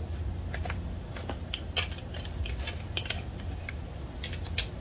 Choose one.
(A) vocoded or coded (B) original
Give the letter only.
B